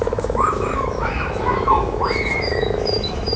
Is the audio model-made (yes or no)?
yes